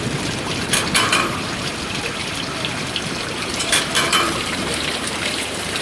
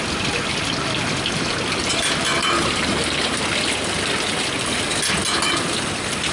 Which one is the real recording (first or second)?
second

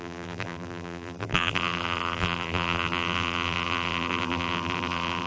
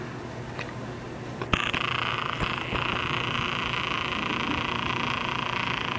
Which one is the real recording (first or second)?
second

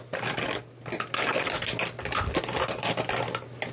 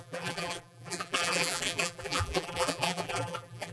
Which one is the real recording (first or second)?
first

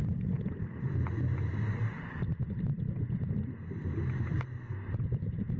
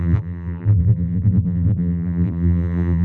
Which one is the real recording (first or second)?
first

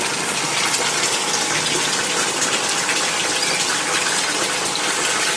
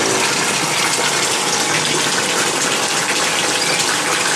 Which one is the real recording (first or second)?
second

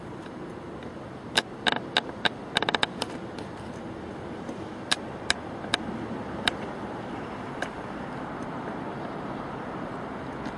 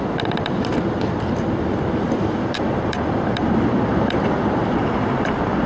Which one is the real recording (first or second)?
first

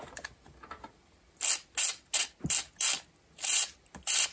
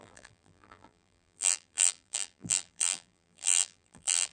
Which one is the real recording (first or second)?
first